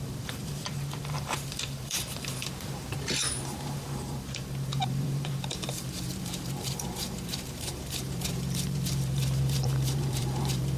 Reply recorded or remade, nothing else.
remade